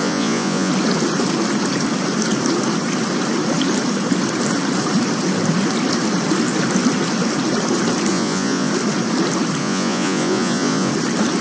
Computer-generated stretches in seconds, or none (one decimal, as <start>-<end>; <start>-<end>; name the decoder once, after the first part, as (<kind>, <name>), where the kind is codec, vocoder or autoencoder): 0.0-0.7 (vocoder, Vocos); 8.1-8.7; 9.6-10.9